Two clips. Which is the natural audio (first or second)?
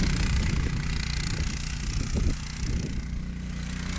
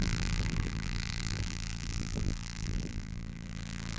first